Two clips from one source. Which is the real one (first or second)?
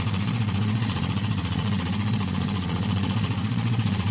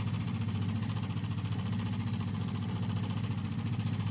second